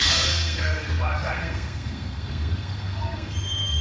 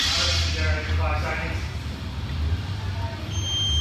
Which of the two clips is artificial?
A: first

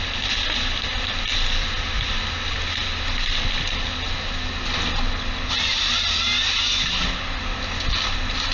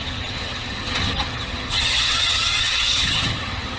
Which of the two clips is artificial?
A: second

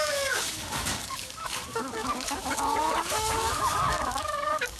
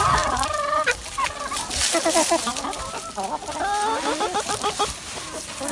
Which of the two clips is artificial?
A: first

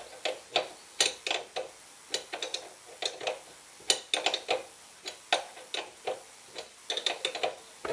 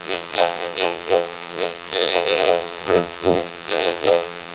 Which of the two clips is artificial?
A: second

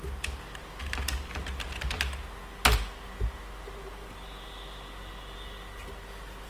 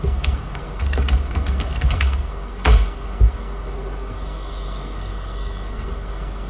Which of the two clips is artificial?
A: second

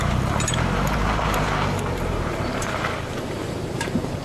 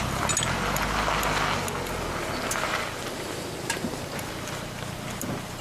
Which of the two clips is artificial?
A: first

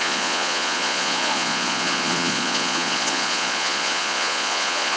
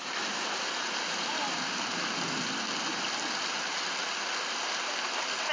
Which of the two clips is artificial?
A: first